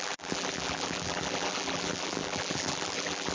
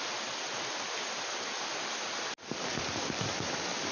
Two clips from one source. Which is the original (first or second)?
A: second